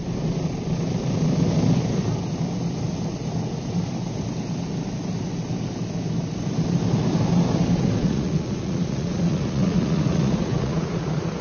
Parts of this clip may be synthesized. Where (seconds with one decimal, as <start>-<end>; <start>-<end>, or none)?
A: 8.0-11.4